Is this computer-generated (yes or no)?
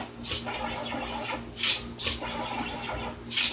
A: no